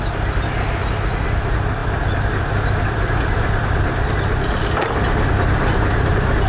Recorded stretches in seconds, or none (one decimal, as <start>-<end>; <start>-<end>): 0.0-6.5